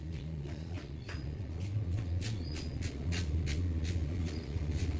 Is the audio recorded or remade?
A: remade